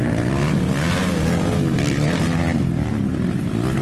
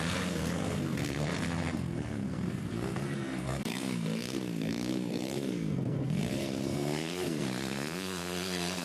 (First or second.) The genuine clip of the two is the first